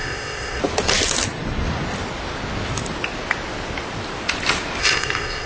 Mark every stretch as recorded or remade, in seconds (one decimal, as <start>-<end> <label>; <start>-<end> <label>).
0.0-0.6 remade; 0.6-4.8 recorded; 4.8-5.5 remade